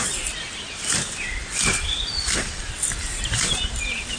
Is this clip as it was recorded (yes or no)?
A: no